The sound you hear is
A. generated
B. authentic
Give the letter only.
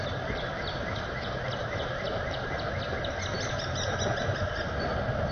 B